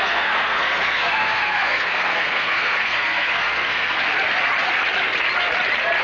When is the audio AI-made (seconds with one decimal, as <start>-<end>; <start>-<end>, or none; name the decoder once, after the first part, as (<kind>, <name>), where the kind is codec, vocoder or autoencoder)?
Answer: 0.0-4.0 (codec, SNAC)